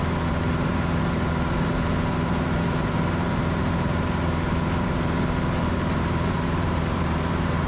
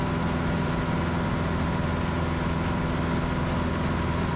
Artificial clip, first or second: first